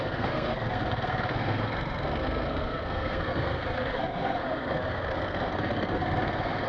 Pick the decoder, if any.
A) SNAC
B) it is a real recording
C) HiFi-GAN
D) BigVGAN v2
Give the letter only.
A